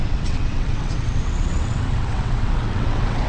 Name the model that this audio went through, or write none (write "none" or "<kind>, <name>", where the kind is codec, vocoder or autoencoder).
vocoder, WaveNeXt